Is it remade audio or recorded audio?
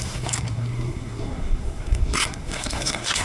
remade